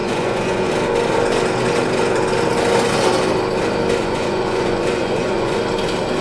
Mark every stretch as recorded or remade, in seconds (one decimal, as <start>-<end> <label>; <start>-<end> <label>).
0.0-0.7 remade; 0.7-4.0 recorded; 4.0-5.6 remade; 5.6-6.2 recorded